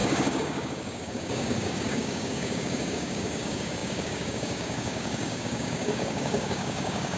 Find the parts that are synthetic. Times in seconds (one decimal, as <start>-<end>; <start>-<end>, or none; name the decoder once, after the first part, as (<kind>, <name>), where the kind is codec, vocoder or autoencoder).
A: 0.0-7.2 (codec, DAC)